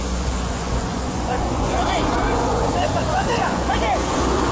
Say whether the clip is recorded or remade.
remade